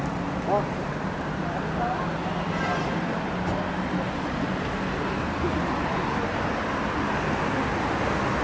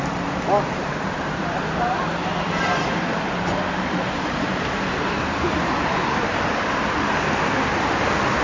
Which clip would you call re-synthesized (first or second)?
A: second